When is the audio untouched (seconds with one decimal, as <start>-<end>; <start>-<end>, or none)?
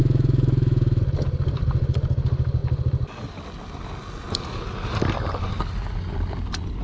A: 1.0-6.8